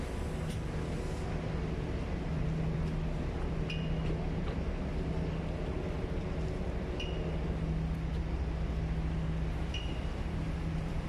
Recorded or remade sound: recorded